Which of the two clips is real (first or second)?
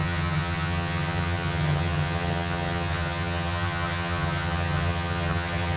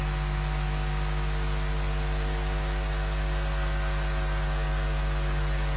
second